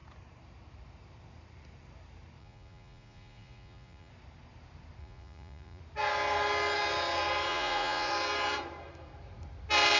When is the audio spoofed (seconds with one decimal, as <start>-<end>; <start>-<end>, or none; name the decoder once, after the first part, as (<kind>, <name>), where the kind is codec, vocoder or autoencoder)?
2.4-4.1 (vocoder, Vocos); 5.0-5.8; 7.5-8.1